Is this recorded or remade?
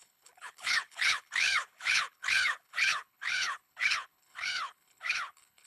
remade